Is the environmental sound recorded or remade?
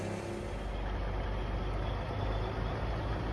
recorded